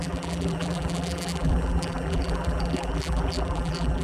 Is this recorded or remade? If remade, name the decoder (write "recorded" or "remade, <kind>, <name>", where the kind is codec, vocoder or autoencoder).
remade, vocoder, BigVGAN v2